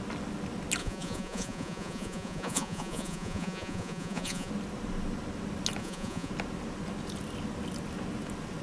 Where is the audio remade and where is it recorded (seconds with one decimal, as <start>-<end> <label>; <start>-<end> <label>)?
0.0-0.8 recorded; 0.8-4.5 remade; 4.5-5.8 recorded; 5.8-6.3 remade; 6.3-8.6 recorded